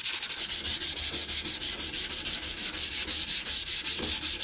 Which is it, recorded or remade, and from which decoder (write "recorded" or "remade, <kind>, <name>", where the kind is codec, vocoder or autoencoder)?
recorded